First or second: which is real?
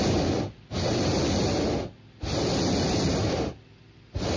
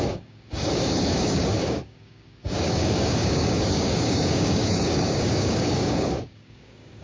first